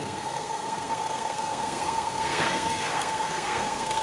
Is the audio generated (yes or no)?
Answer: yes